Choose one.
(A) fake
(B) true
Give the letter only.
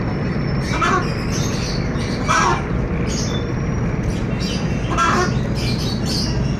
B